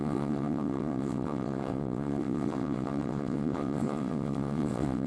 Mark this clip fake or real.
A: fake